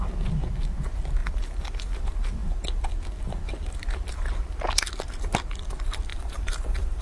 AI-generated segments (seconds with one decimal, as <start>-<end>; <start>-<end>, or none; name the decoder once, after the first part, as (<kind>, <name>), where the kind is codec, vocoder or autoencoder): 1.2-2.0 (vocoder, BigVGAN v2); 6.1-7.0